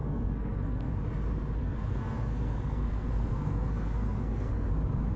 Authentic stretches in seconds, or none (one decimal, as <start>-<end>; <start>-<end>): 0.9-1.6; 4.7-5.2